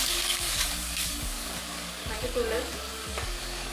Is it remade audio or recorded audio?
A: remade